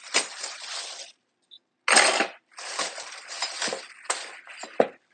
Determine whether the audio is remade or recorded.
recorded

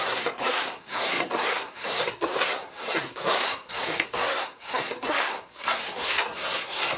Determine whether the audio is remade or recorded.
remade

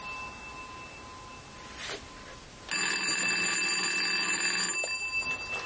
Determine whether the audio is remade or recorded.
recorded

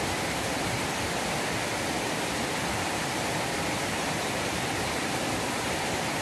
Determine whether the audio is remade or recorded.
remade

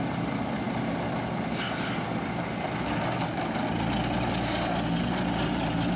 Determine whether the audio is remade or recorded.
recorded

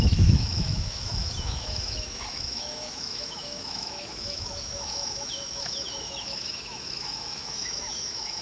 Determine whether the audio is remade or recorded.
remade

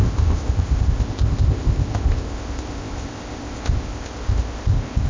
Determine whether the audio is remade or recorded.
remade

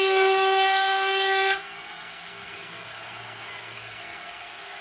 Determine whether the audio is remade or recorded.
remade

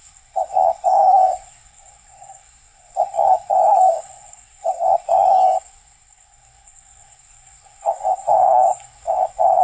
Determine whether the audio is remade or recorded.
remade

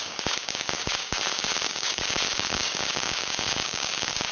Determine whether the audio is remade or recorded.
remade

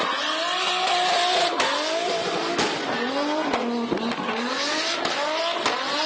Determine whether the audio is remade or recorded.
recorded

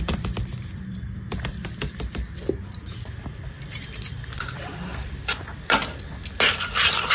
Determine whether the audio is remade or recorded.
remade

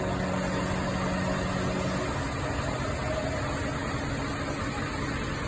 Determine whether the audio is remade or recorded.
recorded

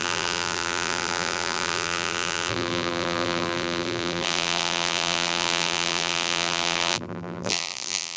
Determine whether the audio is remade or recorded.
remade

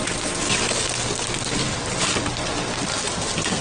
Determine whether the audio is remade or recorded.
recorded